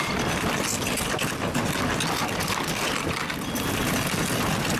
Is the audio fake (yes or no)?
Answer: no